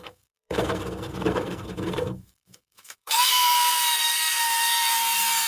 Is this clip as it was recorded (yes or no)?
no